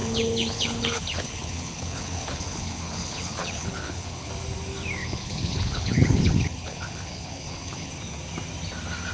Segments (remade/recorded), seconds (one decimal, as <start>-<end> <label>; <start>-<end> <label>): 0.0-4.3 remade; 4.3-5.0 recorded; 5.0-7.9 remade; 7.9-9.1 recorded